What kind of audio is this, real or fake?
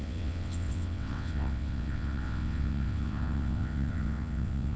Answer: fake